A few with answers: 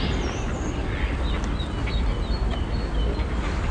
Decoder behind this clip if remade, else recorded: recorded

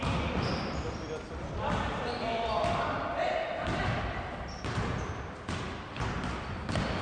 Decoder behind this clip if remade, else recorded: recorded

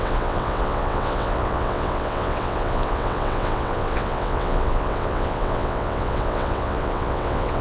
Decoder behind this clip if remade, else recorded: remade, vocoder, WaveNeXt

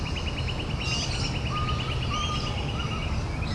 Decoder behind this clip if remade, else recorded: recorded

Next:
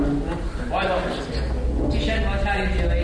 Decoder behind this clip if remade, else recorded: recorded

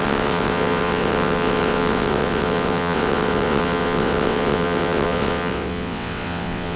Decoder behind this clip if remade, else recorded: remade, vocoder, WaveNeXt